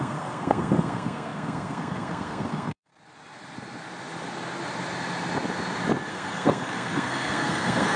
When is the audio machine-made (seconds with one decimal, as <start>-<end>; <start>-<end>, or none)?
0.0-2.9; 6.1-8.0